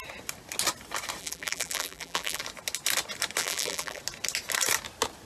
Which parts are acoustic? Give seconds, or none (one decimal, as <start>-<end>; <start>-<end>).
0.0-1.2; 2.4-3.4; 4.0-5.3